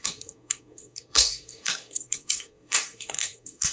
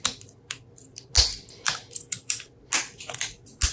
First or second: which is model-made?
first